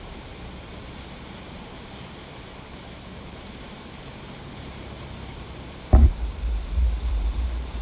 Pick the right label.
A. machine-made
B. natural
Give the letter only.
A